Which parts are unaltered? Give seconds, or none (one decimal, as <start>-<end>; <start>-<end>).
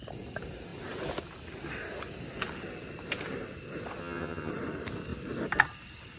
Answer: 0.0-4.0; 4.5-6.2